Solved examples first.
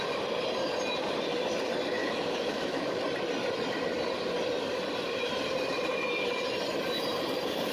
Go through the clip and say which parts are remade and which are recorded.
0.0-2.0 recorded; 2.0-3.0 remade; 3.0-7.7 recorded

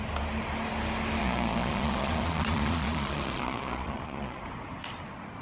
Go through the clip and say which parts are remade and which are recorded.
0.0-1.2 recorded; 1.2-4.4 remade; 4.4-5.4 recorded